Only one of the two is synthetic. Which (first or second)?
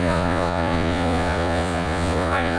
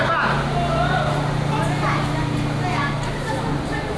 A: first